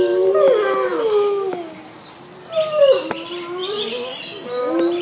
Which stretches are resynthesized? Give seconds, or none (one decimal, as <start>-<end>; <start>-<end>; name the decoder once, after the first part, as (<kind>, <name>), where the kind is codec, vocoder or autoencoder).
none